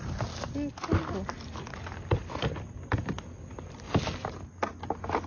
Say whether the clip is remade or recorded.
recorded